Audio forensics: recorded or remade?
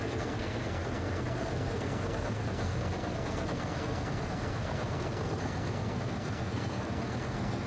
remade